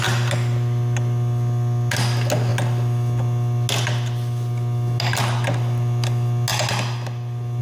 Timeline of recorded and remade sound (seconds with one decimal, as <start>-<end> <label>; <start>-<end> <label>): 0.0-7.6 recorded